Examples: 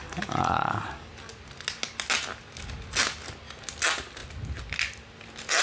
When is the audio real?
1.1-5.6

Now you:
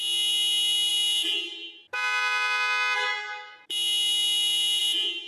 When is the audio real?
0.0-5.3

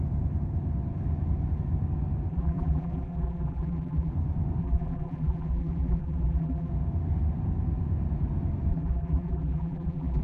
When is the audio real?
0.0-2.3; 4.1-4.6; 6.7-8.7

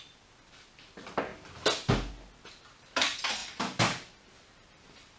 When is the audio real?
0.0-5.2

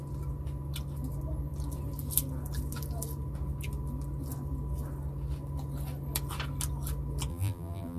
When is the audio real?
0.0-7.3

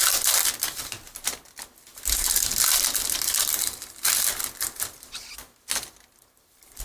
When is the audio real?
0.0-6.8

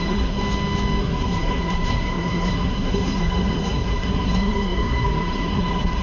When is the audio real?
0.4-1.0